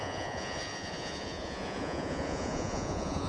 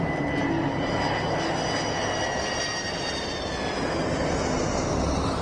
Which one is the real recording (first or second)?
second